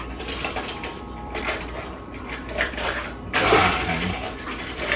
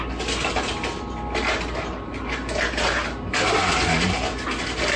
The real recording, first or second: second